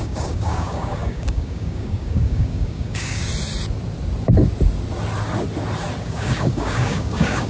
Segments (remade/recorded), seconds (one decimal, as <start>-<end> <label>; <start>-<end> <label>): 0.0-3.3 remade; 3.3-6.0 recorded; 6.0-7.5 remade